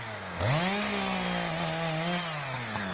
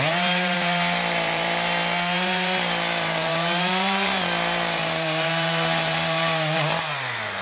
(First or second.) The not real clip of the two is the second